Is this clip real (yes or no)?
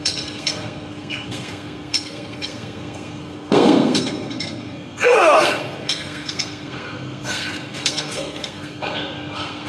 no